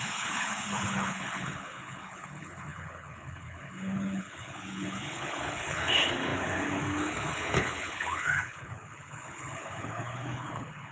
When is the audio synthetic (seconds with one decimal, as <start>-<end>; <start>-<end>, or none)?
0.0-10.9